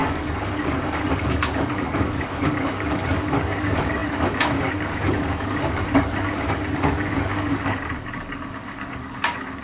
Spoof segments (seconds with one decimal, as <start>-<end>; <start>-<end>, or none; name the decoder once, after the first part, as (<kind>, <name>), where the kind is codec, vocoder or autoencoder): 0.0-9.6 (codec, DAC)